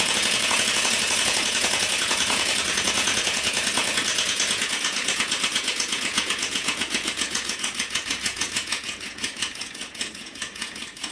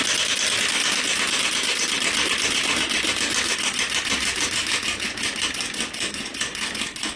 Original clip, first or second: second